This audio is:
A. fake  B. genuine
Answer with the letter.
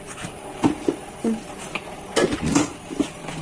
B